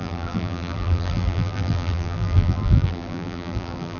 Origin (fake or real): fake